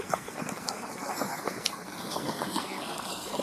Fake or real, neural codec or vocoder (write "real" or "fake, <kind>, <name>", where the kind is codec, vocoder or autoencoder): fake, codec, SNAC